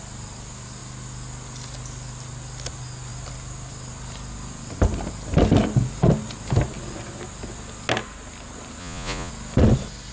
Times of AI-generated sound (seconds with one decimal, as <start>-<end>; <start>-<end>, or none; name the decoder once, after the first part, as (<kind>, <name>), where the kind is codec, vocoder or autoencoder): 8.8-9.3 (vocoder, Vocos)